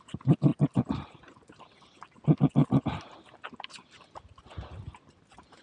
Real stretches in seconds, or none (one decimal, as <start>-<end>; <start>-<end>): 0.0-0.5; 2.0-5.6